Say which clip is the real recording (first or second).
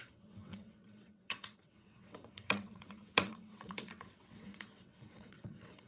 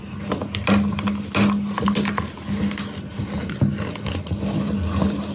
second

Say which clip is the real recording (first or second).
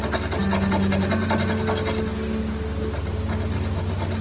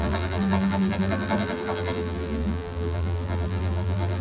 first